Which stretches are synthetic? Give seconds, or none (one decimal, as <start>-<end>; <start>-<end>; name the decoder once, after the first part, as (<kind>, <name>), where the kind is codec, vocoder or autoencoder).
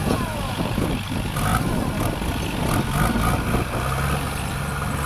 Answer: 0.0-0.9 (vocoder, Vocos)